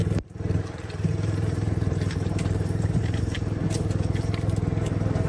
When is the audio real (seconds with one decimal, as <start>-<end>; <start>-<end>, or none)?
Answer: 3.2-5.3